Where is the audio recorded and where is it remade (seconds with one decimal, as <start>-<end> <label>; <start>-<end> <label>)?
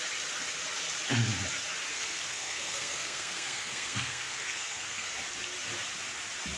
0.0-1.9 recorded; 1.9-5.1 remade; 5.1-6.6 recorded